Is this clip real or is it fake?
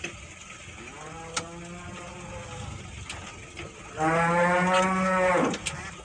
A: real